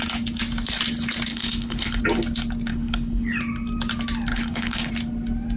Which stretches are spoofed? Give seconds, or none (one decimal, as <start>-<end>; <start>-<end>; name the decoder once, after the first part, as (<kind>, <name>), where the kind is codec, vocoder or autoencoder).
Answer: 1.3-2.0 (codec, HILCodec); 2.7-3.4; 4.3-4.9